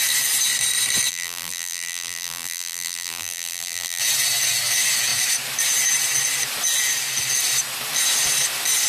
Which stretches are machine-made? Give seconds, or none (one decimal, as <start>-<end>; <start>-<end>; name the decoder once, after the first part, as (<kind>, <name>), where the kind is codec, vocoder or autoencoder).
1.1-4.0 (vocoder, BigVGAN v2)